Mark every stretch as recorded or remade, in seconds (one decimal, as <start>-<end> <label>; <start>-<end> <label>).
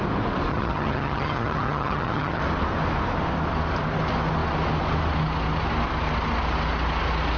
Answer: 0.0-0.5 recorded; 0.5-2.4 remade; 2.4-7.4 recorded